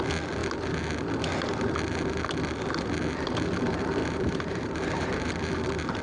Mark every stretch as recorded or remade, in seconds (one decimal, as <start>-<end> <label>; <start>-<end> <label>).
0.0-4.0 recorded; 4.0-5.3 remade; 5.3-6.0 recorded